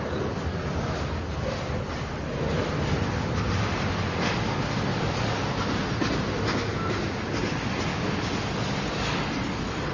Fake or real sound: real